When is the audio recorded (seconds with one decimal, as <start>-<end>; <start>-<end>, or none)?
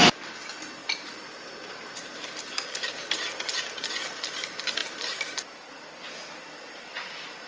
0.0-0.8; 3.3-4.8; 5.7-7.5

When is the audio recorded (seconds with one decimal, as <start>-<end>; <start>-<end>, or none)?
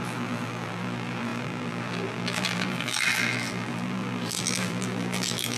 none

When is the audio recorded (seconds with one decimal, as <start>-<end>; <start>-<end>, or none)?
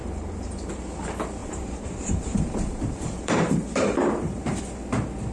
0.7-1.4; 4.6-5.3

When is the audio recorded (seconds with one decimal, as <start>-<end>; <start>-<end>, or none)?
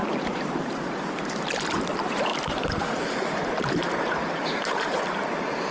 0.7-2.3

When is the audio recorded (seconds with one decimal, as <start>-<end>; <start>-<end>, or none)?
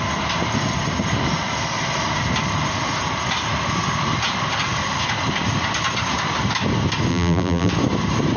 0.0-7.1; 7.7-8.4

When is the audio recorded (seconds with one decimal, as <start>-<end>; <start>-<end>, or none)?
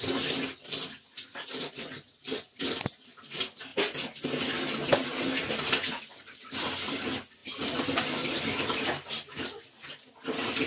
0.0-1.3; 2.6-10.7